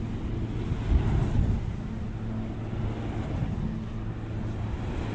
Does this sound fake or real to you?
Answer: real